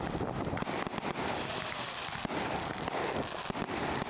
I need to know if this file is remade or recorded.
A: recorded